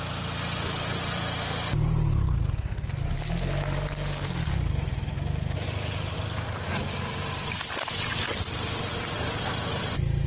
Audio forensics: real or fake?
real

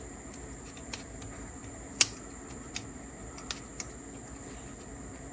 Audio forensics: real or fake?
real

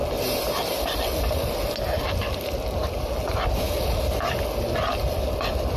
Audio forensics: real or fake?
real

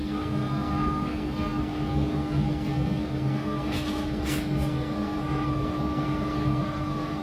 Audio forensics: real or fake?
fake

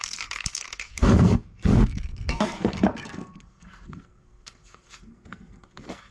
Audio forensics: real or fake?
fake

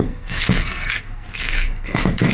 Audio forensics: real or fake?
fake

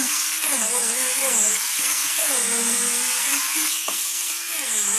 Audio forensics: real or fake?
fake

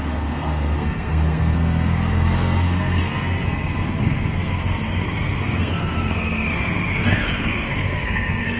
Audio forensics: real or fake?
fake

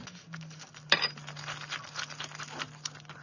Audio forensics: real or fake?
real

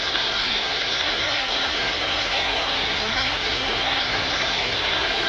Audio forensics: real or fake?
fake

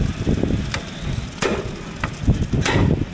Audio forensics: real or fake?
real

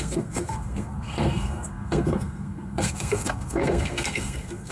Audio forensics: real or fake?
fake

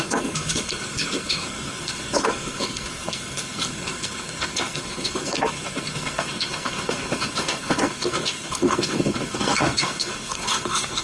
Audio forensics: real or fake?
fake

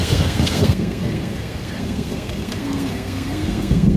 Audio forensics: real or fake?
fake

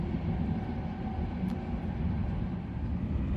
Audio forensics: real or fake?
real